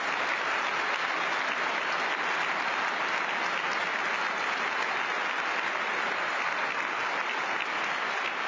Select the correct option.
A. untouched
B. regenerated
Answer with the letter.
A